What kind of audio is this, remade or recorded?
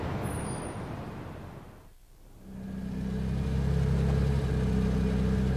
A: recorded